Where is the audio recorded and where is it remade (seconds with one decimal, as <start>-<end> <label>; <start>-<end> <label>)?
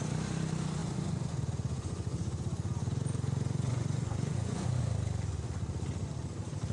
0.0-0.8 recorded; 0.8-4.8 remade; 4.8-6.7 recorded